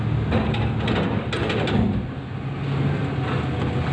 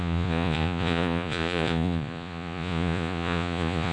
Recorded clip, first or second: first